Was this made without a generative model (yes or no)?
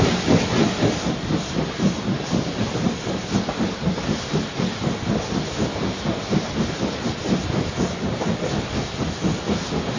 yes